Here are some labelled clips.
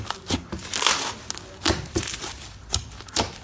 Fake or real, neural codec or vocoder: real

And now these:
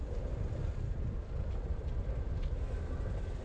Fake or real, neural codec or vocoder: real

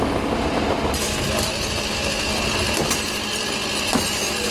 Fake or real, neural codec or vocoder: real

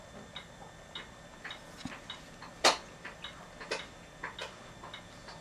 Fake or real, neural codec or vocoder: real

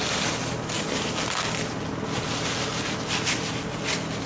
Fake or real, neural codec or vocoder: real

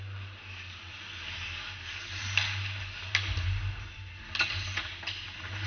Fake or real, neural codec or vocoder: real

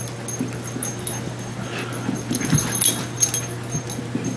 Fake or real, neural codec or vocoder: real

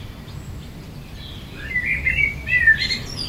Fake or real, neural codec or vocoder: real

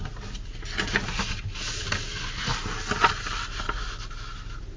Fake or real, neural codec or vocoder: real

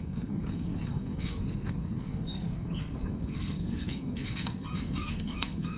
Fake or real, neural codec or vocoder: fake, codec, SNAC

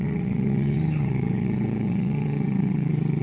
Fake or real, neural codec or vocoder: fake, vocoder, WaveNeXt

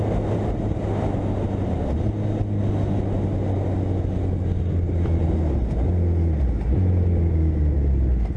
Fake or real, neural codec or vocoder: real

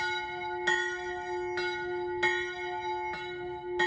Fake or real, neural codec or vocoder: real